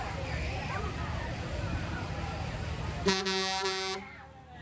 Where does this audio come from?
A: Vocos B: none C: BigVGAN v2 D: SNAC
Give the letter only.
B